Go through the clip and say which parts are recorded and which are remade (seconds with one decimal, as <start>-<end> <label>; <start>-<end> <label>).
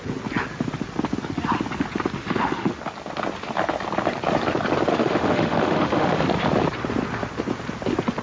0.0-2.2 recorded; 2.2-2.8 remade; 2.8-4.9 recorded; 4.9-6.2 remade; 6.2-8.2 recorded